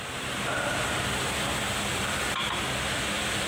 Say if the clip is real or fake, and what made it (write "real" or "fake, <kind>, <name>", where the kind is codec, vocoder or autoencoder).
real